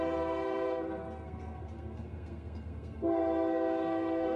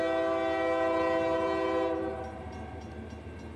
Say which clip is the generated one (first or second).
first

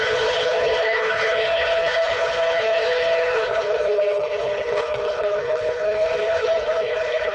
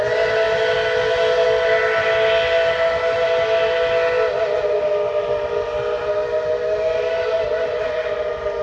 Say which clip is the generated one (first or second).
first